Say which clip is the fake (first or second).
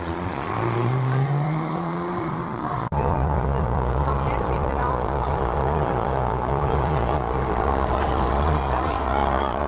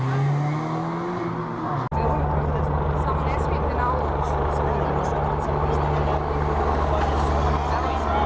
first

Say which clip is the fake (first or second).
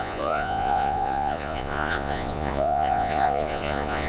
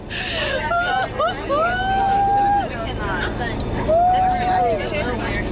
first